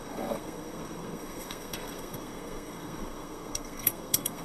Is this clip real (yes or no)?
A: no